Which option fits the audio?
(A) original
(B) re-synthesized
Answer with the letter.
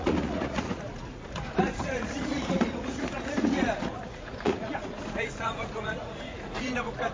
B